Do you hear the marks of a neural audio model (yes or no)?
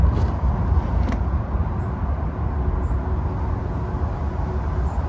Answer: no